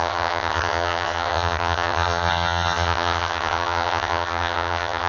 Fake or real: fake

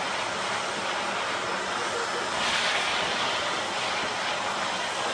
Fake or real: real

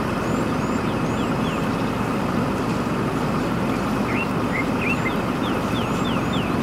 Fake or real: real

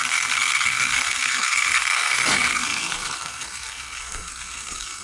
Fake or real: fake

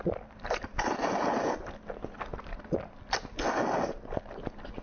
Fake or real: real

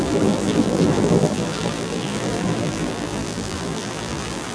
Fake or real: fake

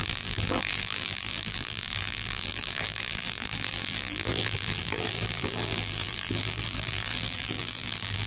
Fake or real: fake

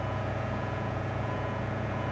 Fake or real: fake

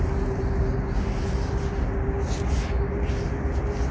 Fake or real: real